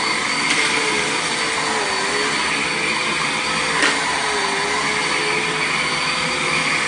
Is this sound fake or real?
real